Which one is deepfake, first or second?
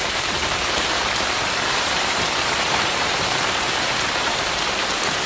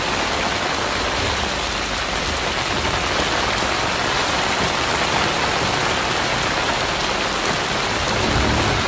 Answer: first